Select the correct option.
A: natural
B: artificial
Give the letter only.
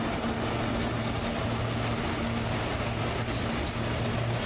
A